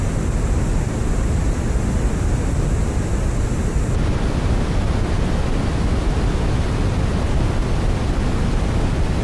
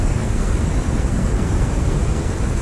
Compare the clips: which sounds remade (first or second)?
second